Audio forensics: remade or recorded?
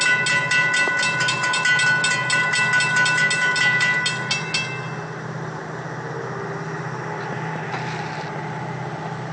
recorded